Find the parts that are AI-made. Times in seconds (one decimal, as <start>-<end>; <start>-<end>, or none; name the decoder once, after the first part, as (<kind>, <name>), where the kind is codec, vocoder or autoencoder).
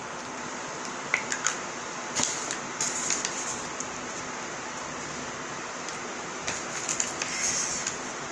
none